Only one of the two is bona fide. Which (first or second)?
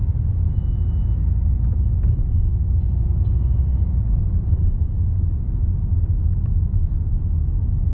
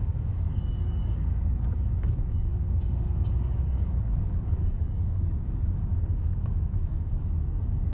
first